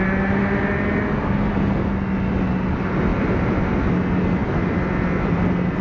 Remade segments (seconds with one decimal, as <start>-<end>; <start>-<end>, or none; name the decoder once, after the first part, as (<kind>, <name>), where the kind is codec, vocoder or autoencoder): none

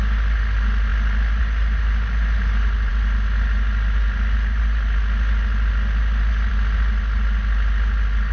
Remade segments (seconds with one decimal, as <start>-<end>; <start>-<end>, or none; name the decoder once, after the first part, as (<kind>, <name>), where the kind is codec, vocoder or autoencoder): none

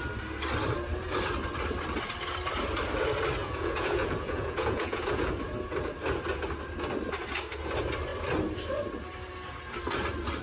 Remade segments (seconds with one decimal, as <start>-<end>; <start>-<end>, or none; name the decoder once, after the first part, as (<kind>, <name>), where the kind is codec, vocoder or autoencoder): 3.4-5.3 (vocoder, Vocos)

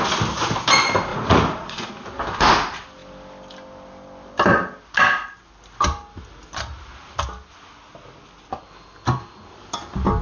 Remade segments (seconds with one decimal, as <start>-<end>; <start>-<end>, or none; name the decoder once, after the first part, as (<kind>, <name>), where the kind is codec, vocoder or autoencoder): 1.1-1.9 (vocoder, Vocos)

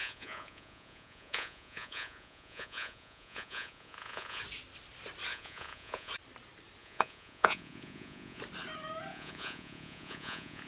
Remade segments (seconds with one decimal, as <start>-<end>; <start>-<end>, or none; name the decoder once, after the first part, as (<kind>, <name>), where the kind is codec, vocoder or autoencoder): 0.0-4.4 (vocoder, Vocos); 5.3-6.1; 6.8-8.4; 9.1-10.7

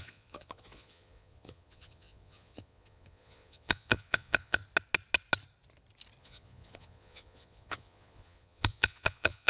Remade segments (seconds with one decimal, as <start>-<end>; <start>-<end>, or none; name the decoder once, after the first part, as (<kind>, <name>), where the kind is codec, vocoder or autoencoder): 0.0-4.6 (vocoder, Vocos); 6.2-9.5